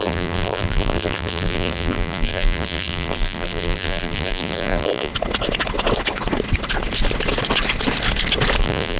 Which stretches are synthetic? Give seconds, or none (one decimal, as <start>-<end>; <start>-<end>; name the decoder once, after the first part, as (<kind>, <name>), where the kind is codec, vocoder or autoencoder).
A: 0.0-5.1 (vocoder, BigVGAN v2); 8.6-9.0